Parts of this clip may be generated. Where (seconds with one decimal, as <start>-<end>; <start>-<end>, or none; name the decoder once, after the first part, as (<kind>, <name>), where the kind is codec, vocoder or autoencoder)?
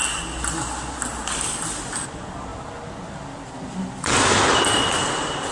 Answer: none